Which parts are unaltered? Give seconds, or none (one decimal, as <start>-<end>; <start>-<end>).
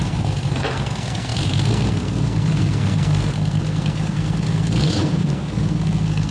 none